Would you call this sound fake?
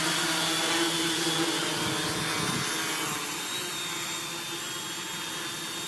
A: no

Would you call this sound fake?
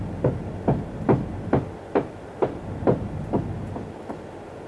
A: no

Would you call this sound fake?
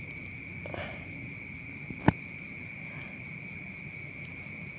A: no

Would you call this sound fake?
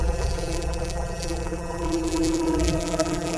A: yes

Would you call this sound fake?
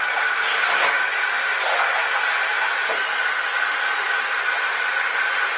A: no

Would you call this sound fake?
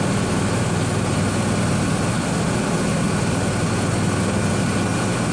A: no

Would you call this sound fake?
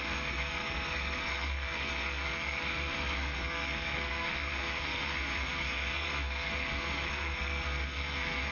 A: yes